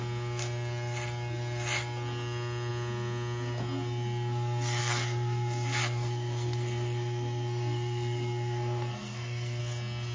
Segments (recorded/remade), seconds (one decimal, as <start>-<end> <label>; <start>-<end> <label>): 0.0-4.8 recorded; 4.8-9.6 remade; 9.6-10.1 recorded